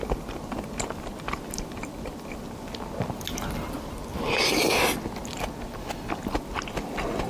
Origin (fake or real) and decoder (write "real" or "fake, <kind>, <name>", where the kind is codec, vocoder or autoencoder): real